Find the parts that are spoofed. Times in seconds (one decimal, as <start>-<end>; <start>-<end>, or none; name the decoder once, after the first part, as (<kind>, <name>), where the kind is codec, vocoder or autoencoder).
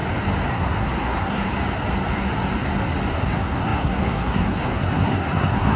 0.5-1.5 (codec, SNAC); 3.1-5.8